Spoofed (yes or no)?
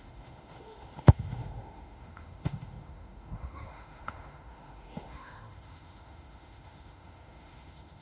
yes